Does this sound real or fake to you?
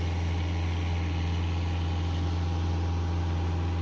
real